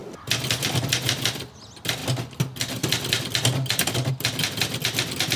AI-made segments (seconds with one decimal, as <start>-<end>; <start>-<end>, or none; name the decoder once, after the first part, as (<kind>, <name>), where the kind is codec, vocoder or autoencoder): none